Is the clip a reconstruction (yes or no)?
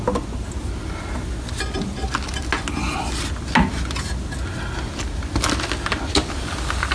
no